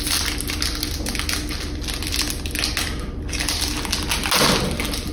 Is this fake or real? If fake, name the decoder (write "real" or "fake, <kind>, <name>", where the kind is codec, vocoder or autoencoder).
real